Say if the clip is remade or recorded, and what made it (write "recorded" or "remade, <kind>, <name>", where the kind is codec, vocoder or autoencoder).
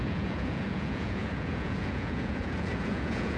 remade, vocoder, Vocos